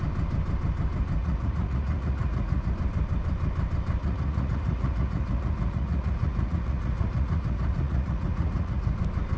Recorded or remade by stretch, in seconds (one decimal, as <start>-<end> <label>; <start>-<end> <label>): 0.0-1.2 recorded; 1.2-2.7 remade; 2.7-4.0 recorded; 4.0-8.9 remade; 8.9-9.4 recorded